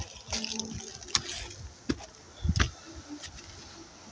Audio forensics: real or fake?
real